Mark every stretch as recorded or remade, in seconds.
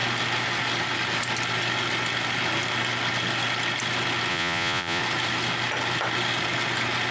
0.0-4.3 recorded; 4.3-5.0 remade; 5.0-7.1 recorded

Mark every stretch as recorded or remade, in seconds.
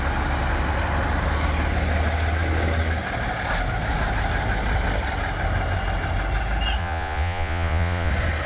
0.0-6.8 recorded; 6.8-8.1 remade; 8.1-8.5 recorded